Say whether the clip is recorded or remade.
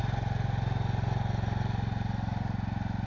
recorded